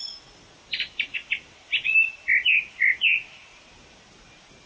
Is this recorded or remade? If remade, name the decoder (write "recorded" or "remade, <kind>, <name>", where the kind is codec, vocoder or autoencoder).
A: recorded